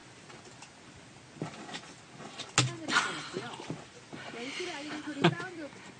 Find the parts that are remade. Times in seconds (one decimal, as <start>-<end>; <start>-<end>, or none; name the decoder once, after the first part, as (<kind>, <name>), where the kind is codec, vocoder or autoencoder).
none